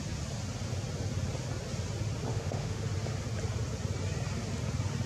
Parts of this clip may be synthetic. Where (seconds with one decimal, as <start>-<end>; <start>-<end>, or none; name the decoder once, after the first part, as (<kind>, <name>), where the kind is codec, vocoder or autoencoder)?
2.3-2.8 (autoencoder, DAC-VAE)